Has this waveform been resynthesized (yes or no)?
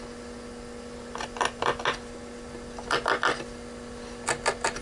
no